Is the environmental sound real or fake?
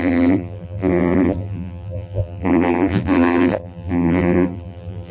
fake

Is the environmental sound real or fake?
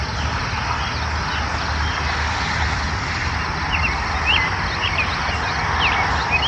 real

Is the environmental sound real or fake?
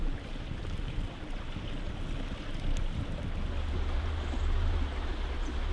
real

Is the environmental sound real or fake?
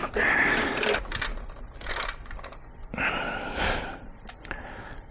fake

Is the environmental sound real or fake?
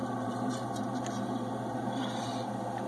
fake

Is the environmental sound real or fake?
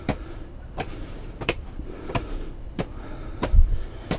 fake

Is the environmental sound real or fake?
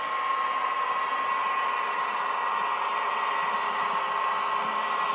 real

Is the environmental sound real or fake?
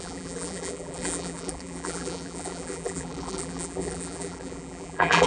fake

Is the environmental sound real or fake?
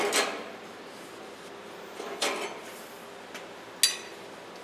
real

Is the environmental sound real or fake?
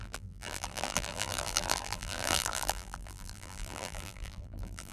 fake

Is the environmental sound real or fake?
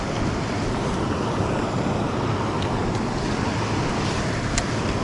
real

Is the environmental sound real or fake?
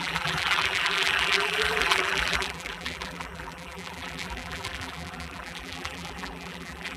fake